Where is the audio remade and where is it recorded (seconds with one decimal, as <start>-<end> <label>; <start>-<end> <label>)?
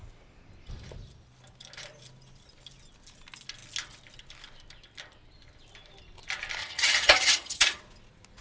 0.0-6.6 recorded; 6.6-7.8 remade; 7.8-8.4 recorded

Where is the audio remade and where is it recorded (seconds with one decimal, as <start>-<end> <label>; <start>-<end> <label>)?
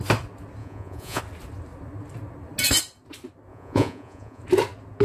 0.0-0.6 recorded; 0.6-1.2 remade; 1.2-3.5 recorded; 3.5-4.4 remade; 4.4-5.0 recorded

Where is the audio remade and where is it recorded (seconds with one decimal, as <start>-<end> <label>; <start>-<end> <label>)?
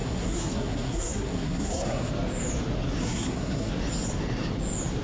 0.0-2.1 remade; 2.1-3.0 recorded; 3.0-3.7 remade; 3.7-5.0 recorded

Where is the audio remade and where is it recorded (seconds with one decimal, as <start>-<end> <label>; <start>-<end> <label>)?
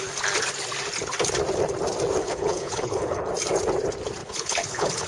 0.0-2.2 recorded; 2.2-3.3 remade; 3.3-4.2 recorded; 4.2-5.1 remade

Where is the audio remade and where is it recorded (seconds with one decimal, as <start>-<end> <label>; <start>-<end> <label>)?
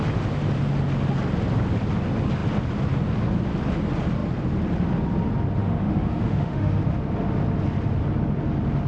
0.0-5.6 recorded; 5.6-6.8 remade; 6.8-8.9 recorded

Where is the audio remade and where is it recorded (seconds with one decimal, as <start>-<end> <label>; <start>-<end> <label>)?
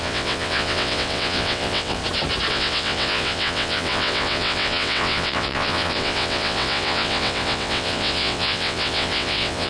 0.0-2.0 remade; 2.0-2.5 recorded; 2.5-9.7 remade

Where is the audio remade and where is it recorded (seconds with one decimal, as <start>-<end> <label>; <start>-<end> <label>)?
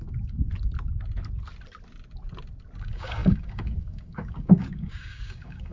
0.0-0.4 remade; 0.4-2.8 recorded; 2.8-5.7 remade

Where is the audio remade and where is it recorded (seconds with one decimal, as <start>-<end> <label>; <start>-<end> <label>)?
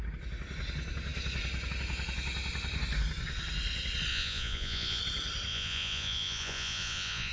0.0-4.1 recorded; 4.1-5.0 remade; 5.0-5.5 recorded; 5.5-7.3 remade